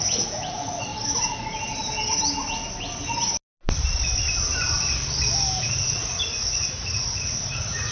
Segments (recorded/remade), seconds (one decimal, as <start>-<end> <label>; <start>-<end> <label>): 0.0-0.9 remade; 0.9-5.6 recorded; 5.6-7.9 remade